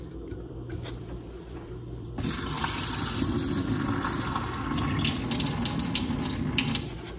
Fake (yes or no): yes